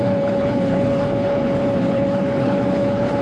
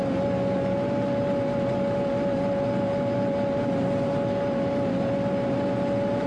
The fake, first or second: first